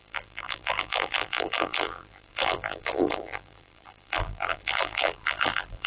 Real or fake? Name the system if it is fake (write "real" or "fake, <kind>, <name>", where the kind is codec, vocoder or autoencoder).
fake, vocoder, BigVGAN v2